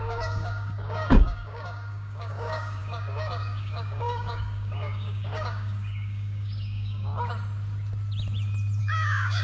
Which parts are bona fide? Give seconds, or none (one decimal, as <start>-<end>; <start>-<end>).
7.1-8.8